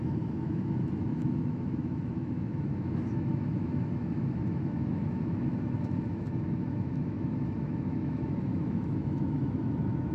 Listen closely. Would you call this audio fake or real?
fake